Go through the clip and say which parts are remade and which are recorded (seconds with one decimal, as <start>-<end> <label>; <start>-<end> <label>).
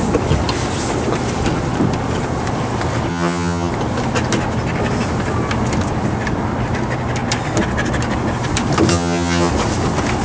0.0-3.1 recorded; 3.1-3.7 remade; 3.7-8.9 recorded; 8.9-9.5 remade; 9.5-10.2 recorded